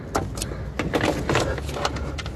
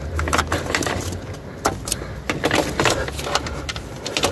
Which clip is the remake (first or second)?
second